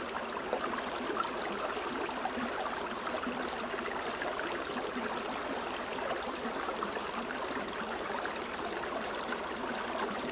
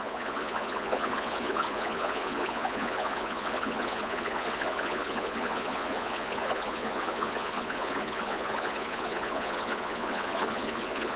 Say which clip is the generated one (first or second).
second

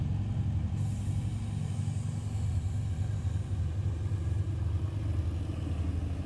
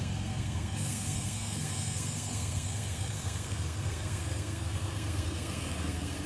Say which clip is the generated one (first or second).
second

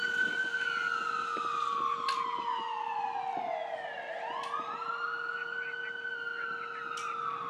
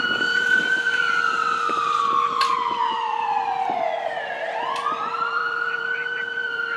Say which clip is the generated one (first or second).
second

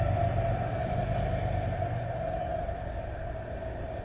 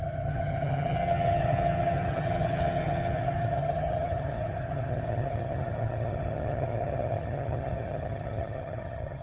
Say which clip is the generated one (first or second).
second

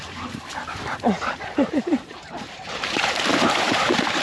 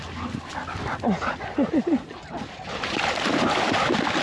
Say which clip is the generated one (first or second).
first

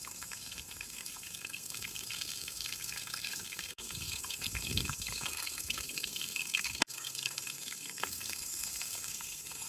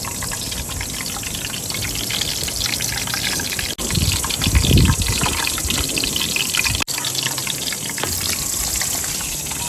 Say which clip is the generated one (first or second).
first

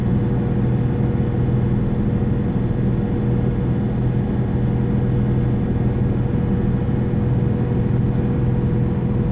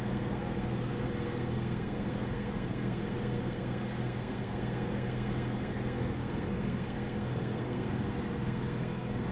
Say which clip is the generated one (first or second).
second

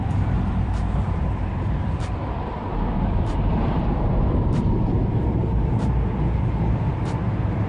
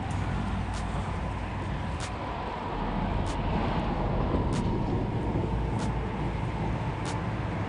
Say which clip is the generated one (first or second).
first